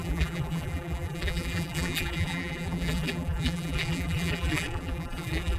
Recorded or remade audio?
remade